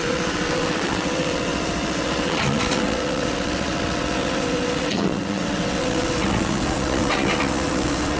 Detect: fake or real fake